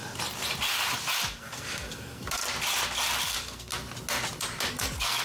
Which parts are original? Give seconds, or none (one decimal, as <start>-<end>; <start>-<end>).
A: 0.0-1.3; 2.4-3.2; 3.7-4.7

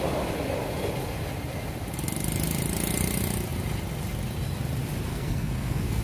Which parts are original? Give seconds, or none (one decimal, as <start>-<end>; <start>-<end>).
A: 0.0-5.1

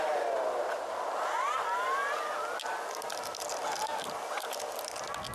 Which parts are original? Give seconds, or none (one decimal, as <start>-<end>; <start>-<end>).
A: 0.0-5.3

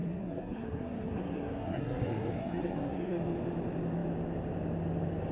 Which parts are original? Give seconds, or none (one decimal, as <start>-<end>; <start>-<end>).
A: 3.2-5.3

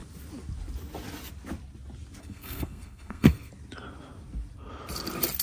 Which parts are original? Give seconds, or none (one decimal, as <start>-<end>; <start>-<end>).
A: 0.0-2.2; 3.5-5.4

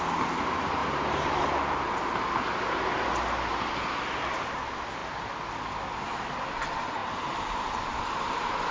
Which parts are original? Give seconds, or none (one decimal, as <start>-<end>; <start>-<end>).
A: 0.0-8.7

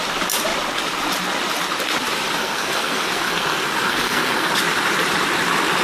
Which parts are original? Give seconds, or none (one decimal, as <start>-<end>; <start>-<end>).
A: 0.0-2.4; 4.5-5.8

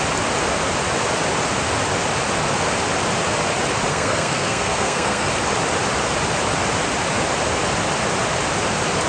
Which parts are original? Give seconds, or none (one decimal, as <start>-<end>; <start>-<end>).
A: 0.0-3.9; 5.3-9.1